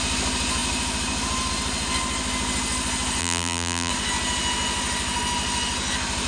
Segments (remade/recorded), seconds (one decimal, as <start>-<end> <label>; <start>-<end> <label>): 0.0-3.2 recorded; 3.2-3.9 remade; 3.9-6.3 recorded